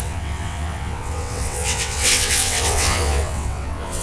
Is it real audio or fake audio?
fake